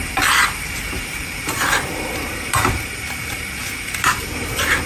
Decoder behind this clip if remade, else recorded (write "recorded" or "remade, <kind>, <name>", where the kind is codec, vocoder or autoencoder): remade, vocoder, BigVGAN v2